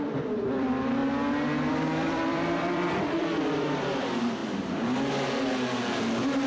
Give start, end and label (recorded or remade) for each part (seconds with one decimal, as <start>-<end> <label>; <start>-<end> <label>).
0.0-1.0 remade; 1.0-1.7 recorded; 1.7-4.4 remade; 4.4-6.5 recorded